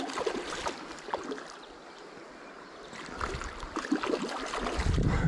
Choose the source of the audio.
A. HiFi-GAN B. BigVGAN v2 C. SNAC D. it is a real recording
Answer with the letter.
D